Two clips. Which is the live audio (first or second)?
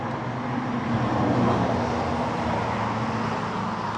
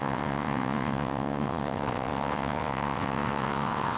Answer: first